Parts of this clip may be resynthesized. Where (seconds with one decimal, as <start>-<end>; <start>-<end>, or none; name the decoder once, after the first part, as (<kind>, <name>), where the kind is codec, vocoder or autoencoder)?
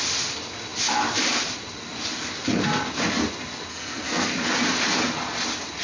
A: 3.7-4.3 (codec, SNAC)